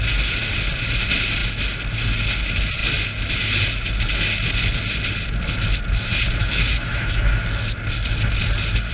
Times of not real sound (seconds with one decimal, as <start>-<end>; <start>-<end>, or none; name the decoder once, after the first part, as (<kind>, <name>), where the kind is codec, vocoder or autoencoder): 6.4-7.4 (autoencoder, DAC-VAE)